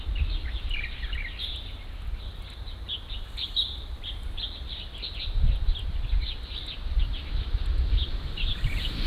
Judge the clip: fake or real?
real